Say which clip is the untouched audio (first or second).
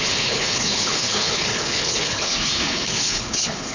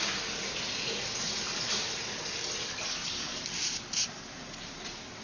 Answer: second